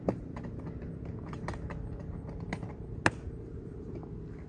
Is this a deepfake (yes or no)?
no